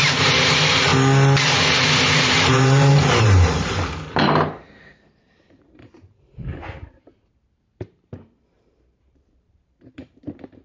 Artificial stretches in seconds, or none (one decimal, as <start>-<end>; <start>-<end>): 0.0-0.9; 1.7-10.6